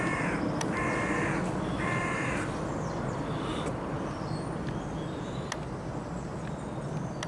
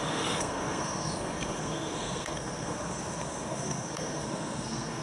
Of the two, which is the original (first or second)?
first